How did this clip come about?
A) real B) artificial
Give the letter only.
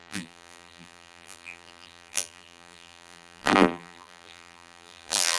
B